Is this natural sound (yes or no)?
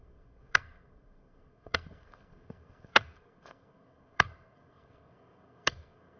no